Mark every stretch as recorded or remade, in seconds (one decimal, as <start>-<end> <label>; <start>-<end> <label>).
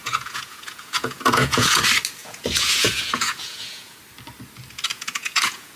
0.0-1.8 remade; 1.8-2.2 recorded; 2.2-4.0 remade; 4.0-4.9 recorded; 4.9-5.8 remade